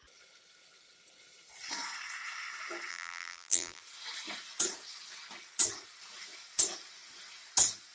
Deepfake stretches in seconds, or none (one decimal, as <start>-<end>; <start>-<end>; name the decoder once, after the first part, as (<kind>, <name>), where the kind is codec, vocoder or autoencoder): 2.9-3.8 (vocoder, BigVGAN v2)